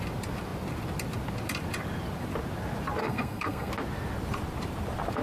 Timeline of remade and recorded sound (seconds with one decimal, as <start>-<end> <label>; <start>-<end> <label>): 0.0-3.0 recorded; 3.0-3.7 remade; 3.7-5.2 recorded